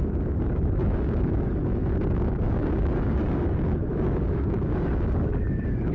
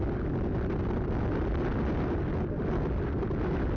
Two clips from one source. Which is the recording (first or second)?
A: second